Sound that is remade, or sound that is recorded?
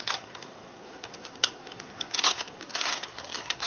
remade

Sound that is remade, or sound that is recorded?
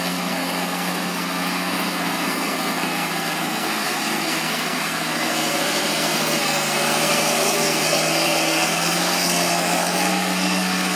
remade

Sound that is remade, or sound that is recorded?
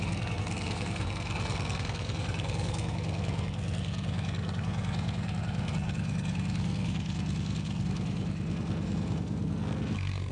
remade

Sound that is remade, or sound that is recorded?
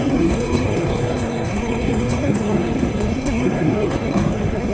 remade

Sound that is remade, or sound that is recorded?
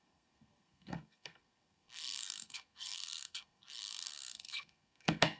remade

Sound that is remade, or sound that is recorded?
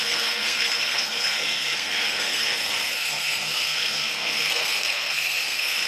remade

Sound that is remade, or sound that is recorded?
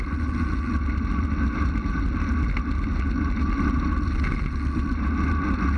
recorded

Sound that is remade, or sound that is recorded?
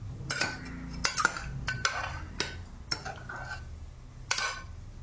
recorded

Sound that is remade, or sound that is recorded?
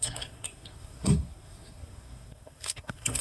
remade